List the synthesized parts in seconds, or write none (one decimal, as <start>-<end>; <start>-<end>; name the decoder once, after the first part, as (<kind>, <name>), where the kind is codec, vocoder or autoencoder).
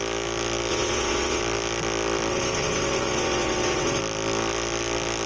0.7-1.4 (vocoder, WaveNeXt); 2.3-4.0